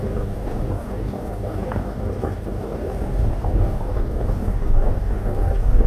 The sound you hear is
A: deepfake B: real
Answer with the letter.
A